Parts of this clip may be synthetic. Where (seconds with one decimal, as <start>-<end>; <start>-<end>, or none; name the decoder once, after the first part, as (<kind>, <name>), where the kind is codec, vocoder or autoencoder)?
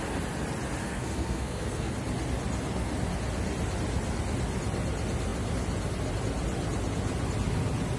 0.8-1.9 (codec, SNAC)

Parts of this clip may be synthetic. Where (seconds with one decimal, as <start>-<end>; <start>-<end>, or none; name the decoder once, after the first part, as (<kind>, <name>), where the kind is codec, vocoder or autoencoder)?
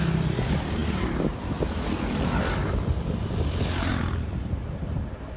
2.6-5.0 (vocoder, BigVGAN v2)